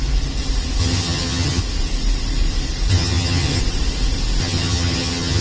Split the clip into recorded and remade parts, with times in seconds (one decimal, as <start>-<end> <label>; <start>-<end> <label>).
0.0-0.8 recorded; 0.8-1.6 remade; 1.6-2.9 recorded; 2.9-3.6 remade; 3.6-4.4 recorded; 4.4-5.4 remade